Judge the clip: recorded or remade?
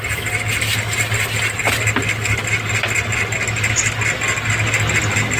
recorded